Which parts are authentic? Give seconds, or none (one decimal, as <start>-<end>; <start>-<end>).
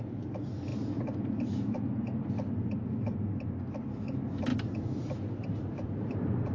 0.0-4.5